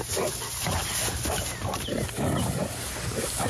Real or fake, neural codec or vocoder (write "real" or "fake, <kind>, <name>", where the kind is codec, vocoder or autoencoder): real